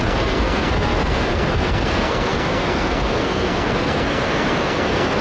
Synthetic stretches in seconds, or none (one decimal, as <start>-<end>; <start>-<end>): 0.0-5.2